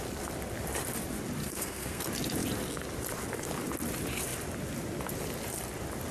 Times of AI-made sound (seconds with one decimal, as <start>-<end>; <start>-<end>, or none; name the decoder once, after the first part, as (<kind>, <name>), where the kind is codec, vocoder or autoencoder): 1.4-2.0 (codec, SNAC)